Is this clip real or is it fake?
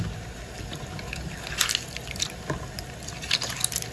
real